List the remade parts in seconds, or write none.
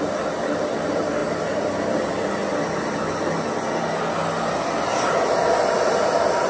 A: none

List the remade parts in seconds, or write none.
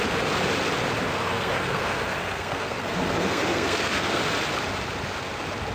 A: 1.1-4.2 (codec, SNAC)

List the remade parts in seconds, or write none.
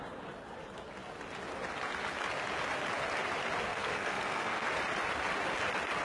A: 3.7-4.7 (codec, SNAC)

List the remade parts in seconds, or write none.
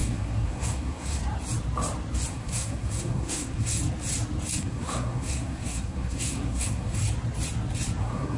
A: 0.0-1.2 (codec, SNAC); 2.3-3.8; 4.6-7.0; 8.0-8.4